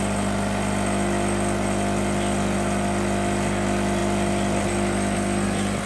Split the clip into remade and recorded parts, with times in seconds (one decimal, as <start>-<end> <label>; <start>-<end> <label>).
0.0-5.9 recorded